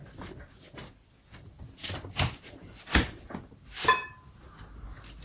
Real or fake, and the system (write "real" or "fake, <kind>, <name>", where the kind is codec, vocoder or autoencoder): real